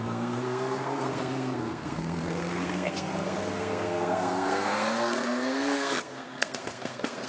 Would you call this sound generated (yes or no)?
yes